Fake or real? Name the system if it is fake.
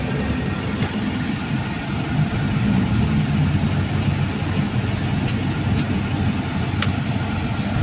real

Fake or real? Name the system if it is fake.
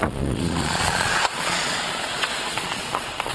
fake, vocoder, Vocos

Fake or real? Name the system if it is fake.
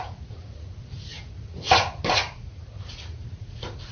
fake, vocoder, Vocos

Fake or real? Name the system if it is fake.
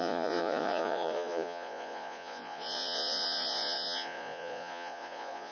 fake, vocoder, Vocos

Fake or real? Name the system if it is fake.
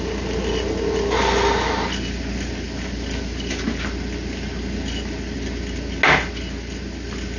real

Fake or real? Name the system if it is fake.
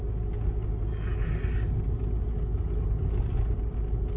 real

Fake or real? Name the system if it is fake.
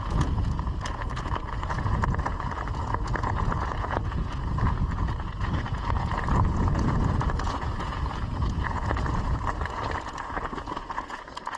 fake, vocoder, Vocos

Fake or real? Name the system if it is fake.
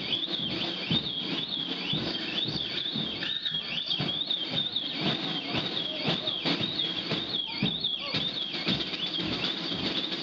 real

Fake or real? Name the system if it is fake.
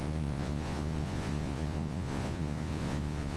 fake, vocoder, Vocos